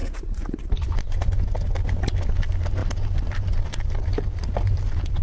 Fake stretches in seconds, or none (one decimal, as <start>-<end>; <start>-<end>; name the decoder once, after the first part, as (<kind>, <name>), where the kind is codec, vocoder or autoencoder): 0.0-1.4 (vocoder, BigVGAN v2); 2.8-4.5